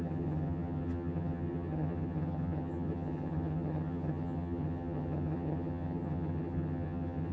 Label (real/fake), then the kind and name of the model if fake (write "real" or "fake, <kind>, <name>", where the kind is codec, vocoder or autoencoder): fake, vocoder, HiFi-GAN